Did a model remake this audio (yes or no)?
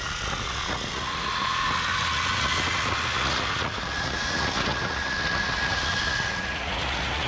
yes